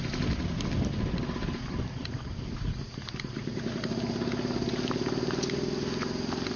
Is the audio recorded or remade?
recorded